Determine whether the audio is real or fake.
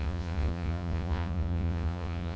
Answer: fake